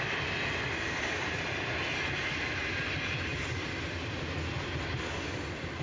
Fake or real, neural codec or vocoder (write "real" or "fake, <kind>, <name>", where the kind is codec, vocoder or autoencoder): real